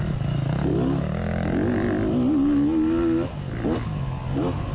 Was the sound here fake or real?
real